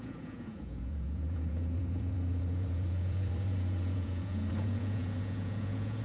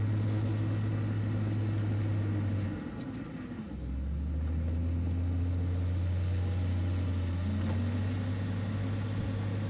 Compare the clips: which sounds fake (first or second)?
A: first